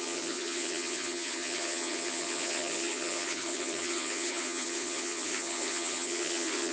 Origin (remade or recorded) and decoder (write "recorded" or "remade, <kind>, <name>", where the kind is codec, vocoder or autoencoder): remade, vocoder, HiFi-GAN